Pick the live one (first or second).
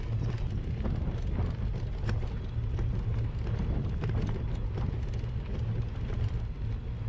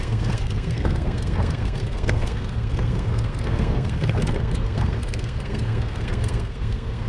first